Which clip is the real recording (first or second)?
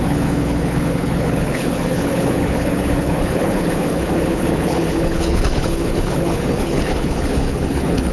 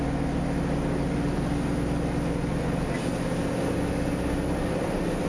second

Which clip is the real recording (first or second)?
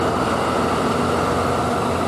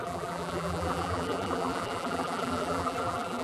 first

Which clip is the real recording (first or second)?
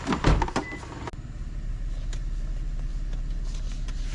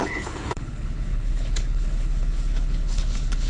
first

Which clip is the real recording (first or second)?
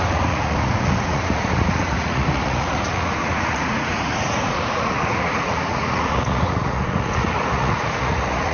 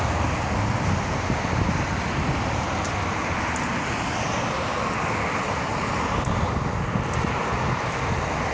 second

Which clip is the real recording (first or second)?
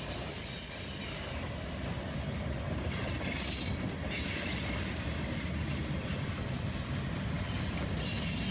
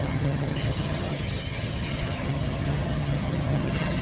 first